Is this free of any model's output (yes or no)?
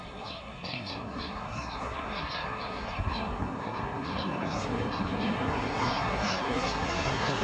no